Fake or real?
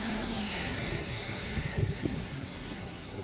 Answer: fake